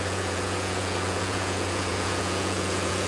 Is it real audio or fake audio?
fake